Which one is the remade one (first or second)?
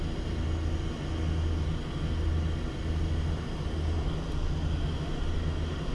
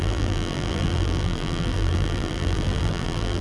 second